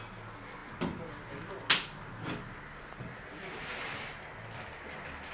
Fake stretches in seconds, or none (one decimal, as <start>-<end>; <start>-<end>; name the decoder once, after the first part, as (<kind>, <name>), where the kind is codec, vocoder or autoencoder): none